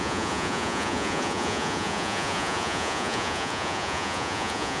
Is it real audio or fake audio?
fake